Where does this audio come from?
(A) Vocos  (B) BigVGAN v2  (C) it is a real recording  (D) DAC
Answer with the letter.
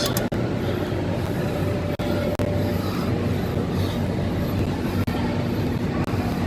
C